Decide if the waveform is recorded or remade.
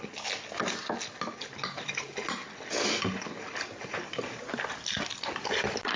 recorded